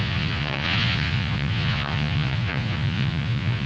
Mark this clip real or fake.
fake